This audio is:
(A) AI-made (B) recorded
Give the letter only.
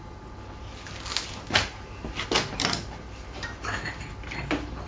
B